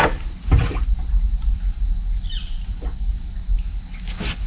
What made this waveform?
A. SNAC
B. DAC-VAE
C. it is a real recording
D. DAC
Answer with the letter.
C